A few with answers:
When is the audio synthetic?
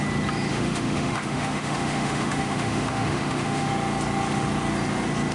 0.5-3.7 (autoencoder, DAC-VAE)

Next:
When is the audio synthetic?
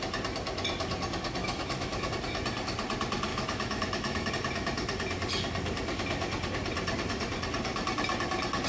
1.4-2.1 (autoencoder, DAC-VAE); 3.3-4.3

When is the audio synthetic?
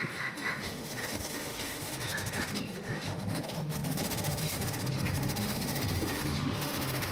0.0-7.1 (autoencoder, DAC-VAE)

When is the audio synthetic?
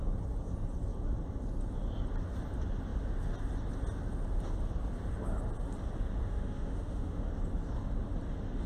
6.2-7.3 (autoencoder, DAC-VAE)